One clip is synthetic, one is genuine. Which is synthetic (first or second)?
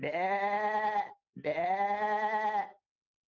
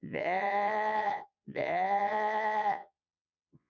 second